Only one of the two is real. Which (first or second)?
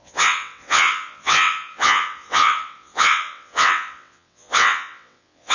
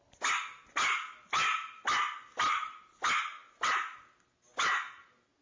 second